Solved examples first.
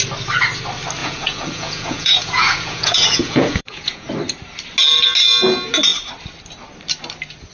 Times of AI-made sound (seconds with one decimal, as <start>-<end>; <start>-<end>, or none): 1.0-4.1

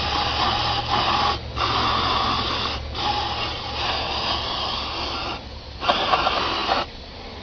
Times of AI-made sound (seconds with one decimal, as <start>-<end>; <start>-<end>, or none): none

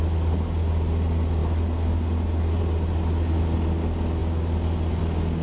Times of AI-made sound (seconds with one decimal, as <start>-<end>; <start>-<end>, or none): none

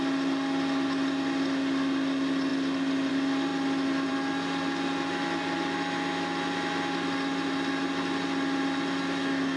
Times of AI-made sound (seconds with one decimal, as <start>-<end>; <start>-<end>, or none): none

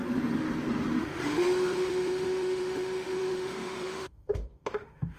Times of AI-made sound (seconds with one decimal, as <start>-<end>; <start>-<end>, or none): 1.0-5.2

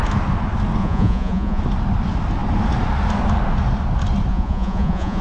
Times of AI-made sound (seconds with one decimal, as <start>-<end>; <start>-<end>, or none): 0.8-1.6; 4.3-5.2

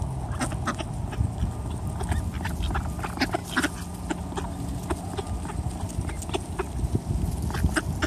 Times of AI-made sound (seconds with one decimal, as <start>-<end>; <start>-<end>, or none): none

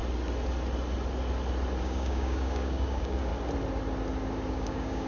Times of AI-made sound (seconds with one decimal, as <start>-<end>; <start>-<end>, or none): 1.8-3.3; 4.5-5.1